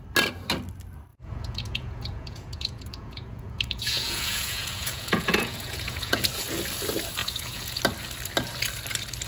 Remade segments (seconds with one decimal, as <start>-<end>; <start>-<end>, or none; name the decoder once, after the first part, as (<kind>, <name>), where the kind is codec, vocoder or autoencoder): 1.1-6.2 (vocoder, Vocos); 7.2-7.8